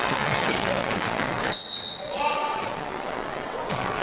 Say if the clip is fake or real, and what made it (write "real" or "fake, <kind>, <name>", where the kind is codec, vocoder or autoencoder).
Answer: fake, vocoder, WaveNeXt